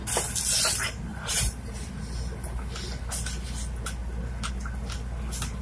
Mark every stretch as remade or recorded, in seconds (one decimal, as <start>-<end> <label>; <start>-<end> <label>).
0.0-1.1 recorded; 1.1-1.9 remade; 1.9-5.6 recorded